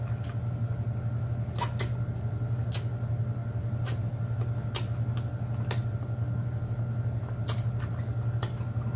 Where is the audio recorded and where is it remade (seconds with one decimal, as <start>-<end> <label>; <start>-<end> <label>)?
0.0-9.0 recorded